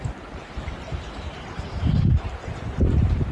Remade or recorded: remade